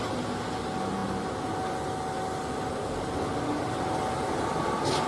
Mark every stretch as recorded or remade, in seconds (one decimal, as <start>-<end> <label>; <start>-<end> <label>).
0.0-5.1 recorded